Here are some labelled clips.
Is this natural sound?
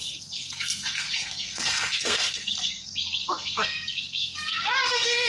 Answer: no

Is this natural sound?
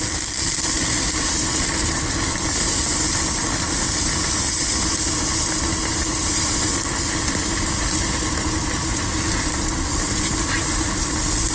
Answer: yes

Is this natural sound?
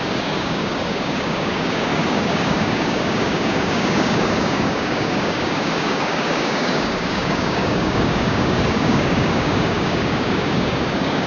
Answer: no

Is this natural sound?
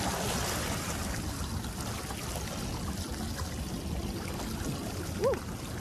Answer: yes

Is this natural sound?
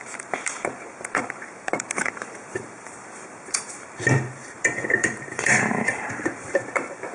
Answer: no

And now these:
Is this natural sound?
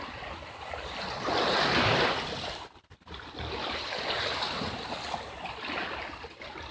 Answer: yes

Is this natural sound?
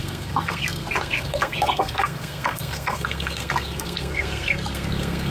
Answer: no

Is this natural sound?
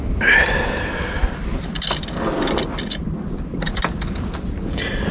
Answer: yes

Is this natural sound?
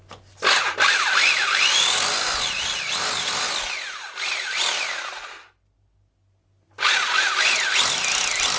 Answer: yes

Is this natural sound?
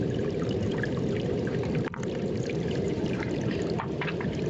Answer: no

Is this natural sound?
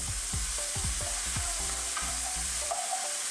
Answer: no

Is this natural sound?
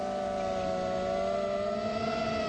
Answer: yes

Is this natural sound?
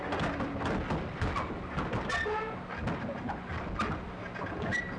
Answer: yes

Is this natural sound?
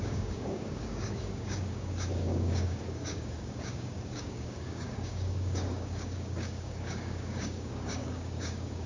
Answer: no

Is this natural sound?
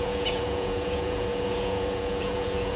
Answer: no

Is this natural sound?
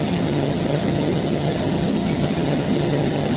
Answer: no